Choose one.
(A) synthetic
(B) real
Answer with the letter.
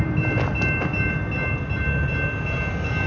B